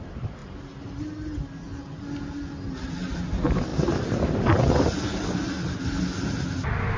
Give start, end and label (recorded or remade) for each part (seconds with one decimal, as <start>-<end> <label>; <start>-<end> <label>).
0.0-7.0 recorded